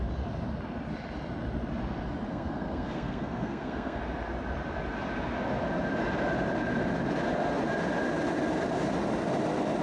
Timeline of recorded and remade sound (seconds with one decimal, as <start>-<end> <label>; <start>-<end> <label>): 0.0-2.3 recorded; 2.3-4.0 remade; 4.0-9.8 recorded